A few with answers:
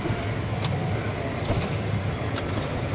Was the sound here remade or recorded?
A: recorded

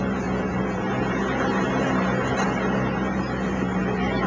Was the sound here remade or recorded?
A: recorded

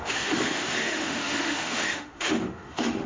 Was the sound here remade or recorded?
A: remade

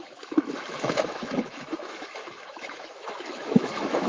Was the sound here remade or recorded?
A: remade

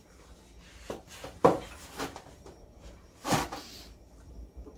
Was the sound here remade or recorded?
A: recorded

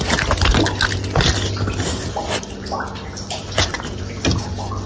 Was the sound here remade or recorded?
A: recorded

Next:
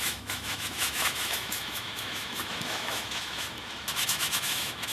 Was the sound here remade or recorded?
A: remade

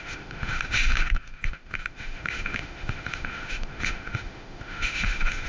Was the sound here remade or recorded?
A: remade